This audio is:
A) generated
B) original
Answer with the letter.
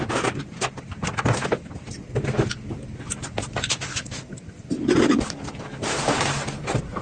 B